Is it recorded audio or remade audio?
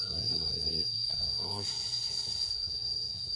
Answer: remade